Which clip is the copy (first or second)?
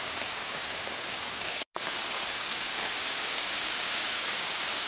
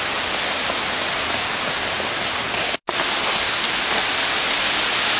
first